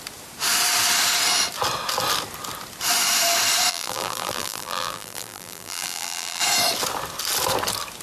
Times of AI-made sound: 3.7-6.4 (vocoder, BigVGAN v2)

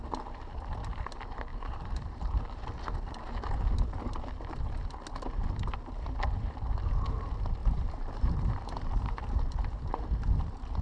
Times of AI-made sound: 1.5-2.5 (vocoder, BigVGAN v2); 7.6-9.4

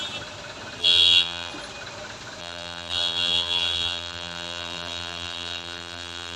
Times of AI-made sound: 0.8-1.5 (vocoder, BigVGAN v2); 2.4-6.4

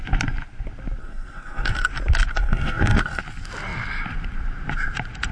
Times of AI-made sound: 1.0-1.9 (codec, SNAC); 2.3-3.2

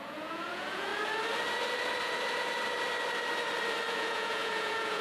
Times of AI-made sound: 0.0-0.9 (vocoder, Vocos); 3.9-5.0

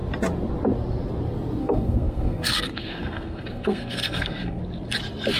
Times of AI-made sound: 1.6-4.6 (codec, SNAC)

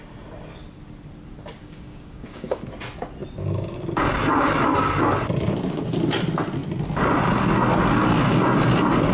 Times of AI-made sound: 1.6-2.6 (codec, DAC)

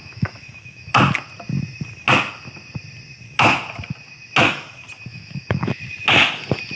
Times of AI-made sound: 0.0-0.9 (autoencoder, DAC-VAE); 5.1-5.8